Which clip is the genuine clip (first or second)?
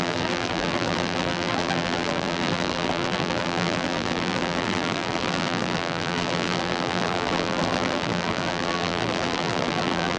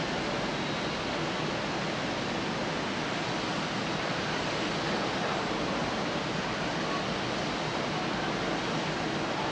second